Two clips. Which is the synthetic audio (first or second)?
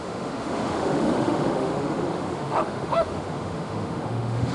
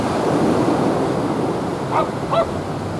first